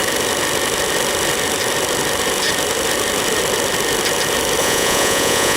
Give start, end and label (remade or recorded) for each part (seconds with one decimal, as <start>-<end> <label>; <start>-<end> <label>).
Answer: 0.0-4.6 recorded; 4.6-5.6 remade